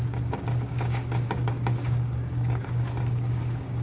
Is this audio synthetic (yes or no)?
yes